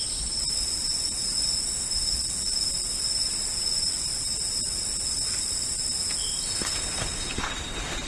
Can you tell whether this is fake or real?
real